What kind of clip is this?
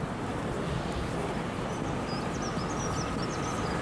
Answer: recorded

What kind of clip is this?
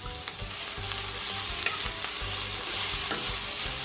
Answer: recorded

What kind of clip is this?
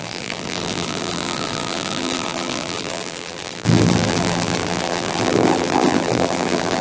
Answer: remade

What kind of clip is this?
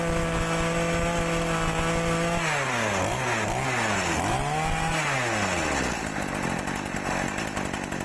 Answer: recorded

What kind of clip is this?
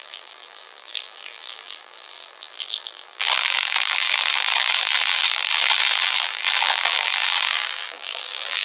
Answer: remade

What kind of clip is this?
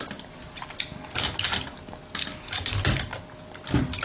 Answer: recorded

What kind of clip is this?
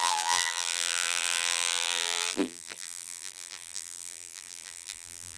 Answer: remade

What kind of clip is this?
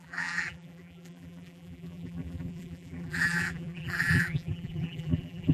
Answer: remade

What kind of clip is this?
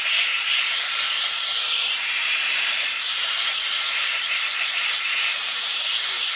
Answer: remade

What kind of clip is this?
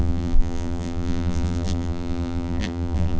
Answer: remade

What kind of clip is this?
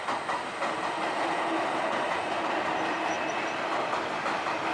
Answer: recorded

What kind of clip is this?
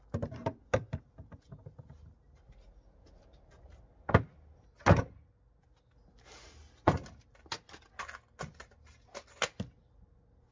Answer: recorded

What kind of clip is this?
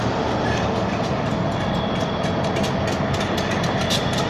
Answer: recorded